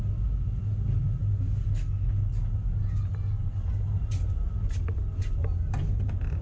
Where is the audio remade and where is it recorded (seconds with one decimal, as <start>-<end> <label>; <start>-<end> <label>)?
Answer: 0.0-6.4 recorded